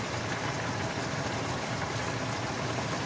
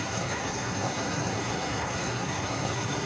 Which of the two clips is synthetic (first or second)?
second